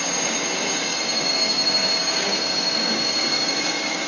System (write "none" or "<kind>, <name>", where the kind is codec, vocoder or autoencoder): codec, DAC